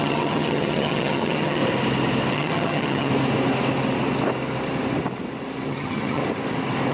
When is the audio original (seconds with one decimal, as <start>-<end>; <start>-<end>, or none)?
1.6-2.3; 3.1-5.7; 6.2-6.9